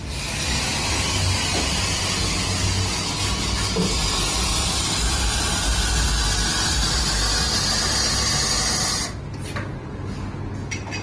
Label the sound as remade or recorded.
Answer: recorded